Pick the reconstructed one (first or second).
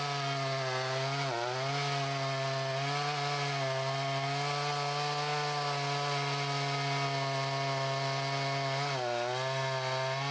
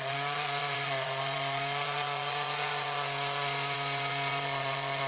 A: second